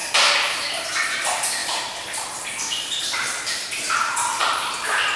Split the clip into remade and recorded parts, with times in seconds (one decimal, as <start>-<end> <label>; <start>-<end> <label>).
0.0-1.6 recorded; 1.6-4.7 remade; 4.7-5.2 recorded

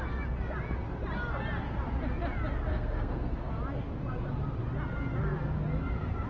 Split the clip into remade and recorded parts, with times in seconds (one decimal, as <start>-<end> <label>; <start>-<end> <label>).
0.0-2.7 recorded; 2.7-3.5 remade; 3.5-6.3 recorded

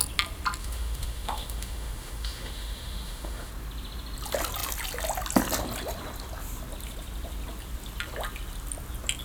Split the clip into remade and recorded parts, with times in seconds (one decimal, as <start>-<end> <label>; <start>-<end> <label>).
0.0-0.6 recorded; 0.6-3.5 remade; 3.5-9.2 recorded

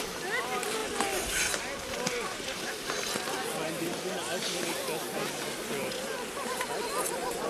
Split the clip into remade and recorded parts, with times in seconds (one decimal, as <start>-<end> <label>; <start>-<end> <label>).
0.0-7.5 recorded